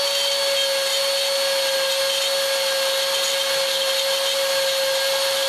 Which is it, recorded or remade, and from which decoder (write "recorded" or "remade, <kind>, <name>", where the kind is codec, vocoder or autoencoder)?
recorded